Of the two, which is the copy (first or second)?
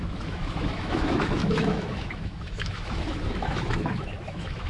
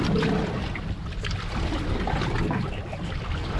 first